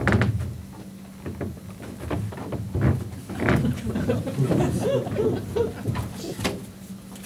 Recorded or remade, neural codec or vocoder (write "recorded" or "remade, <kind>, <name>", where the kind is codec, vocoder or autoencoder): recorded